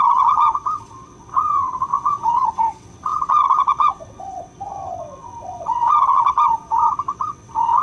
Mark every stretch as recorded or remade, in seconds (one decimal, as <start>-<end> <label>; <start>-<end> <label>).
0.0-7.8 remade